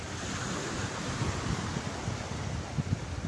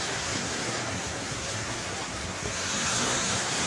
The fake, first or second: second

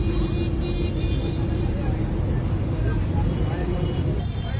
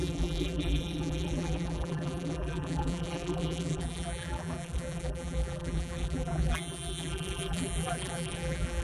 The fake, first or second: second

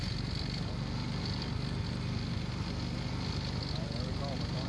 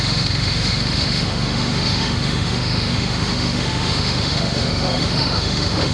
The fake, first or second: second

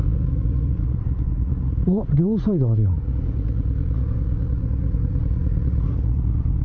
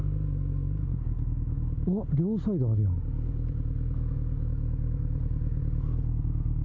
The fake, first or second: first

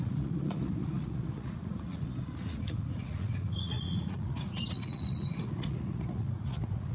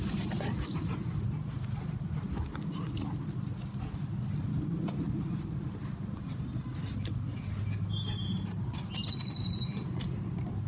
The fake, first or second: first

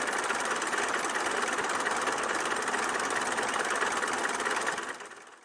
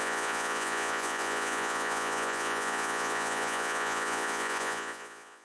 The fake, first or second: second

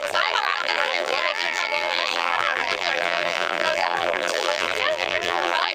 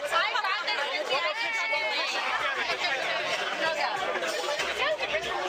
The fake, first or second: first